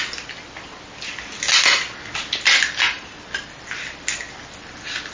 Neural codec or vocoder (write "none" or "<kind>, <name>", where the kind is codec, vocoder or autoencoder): none